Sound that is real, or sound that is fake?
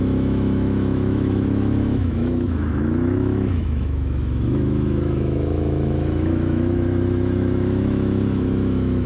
fake